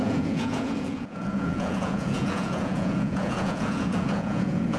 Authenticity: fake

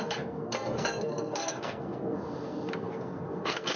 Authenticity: fake